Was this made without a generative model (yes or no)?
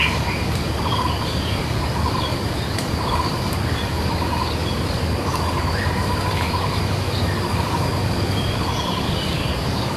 no